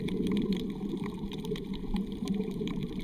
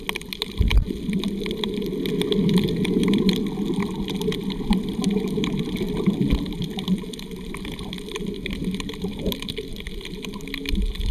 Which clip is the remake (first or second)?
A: first